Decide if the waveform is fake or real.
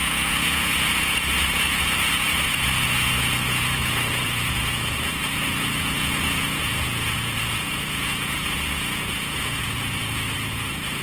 fake